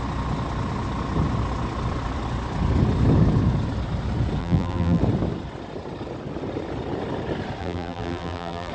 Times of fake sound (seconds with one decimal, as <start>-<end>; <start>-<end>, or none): 4.4-5.0; 7.6-8.7